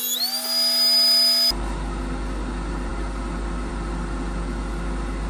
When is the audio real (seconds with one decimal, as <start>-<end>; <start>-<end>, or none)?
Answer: 0.0-5.3